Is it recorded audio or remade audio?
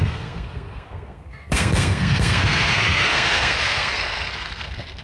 remade